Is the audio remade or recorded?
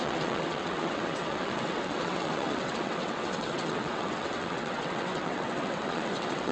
remade